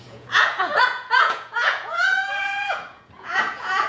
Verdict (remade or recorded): remade